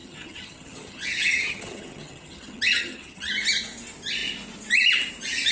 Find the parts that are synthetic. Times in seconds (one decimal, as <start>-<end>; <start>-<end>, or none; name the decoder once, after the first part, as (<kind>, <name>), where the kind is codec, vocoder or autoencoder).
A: 0.0-3.3 (vocoder, HiFi-GAN)